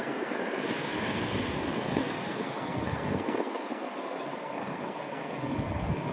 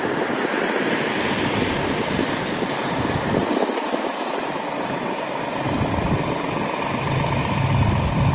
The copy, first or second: first